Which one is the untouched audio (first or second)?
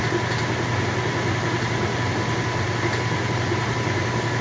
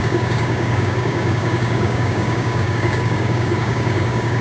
first